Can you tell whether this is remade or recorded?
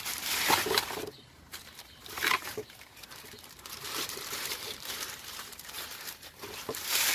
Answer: remade